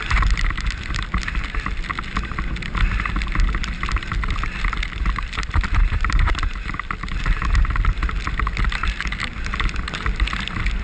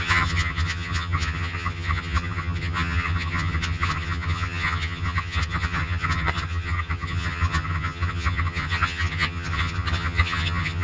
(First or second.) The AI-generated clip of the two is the second